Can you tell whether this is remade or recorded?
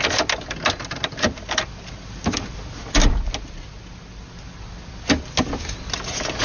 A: recorded